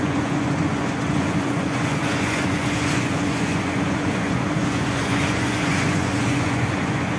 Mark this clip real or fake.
fake